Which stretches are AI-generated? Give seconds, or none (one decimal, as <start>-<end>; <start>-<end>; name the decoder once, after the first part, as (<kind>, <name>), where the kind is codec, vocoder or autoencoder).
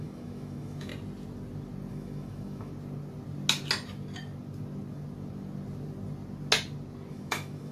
0.0-0.9 (autoencoder, DAC-VAE); 1.9-2.7; 7.1-7.7